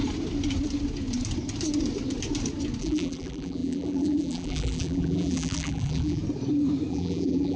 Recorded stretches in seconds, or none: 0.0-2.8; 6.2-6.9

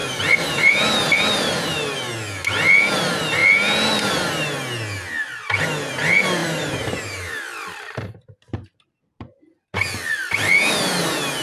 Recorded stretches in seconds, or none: 0.7-6.4; 7.3-11.4

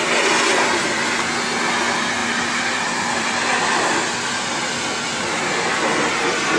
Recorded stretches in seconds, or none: 0.0-2.2; 3.8-6.6